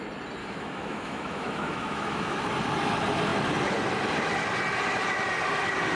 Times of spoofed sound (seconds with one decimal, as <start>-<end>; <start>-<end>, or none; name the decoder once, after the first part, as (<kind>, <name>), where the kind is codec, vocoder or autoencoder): 0.4-2.4 (autoencoder, DAC-VAE)